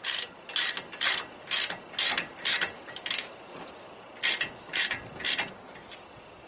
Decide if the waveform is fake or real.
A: real